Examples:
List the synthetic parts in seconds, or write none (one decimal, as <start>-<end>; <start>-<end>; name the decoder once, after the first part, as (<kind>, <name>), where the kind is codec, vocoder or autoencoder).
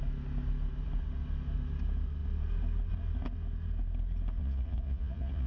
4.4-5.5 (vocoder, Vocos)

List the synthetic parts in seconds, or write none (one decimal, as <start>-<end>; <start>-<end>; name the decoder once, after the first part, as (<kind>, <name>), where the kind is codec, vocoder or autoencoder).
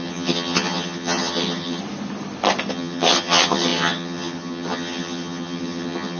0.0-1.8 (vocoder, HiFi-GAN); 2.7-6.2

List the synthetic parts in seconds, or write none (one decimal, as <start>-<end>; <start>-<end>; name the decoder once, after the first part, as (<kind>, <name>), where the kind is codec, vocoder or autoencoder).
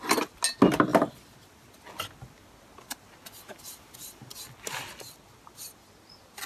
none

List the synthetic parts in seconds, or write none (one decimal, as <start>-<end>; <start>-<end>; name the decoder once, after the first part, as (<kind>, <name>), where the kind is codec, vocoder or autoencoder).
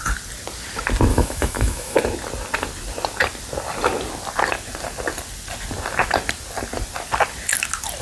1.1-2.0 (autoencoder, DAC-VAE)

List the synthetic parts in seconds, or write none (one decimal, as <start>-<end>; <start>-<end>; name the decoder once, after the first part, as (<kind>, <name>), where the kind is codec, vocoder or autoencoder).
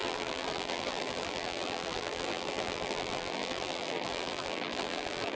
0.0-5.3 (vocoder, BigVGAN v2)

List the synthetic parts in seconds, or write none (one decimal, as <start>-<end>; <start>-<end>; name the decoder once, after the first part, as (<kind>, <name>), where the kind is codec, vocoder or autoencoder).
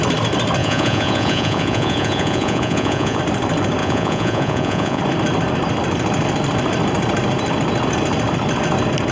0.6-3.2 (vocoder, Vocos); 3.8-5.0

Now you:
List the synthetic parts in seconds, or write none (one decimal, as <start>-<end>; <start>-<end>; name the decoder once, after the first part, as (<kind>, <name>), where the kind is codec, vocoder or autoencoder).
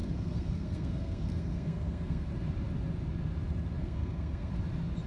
0.0-2.3 (codec, SNAC); 3.8-4.5